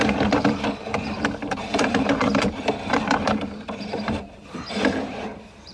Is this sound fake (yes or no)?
yes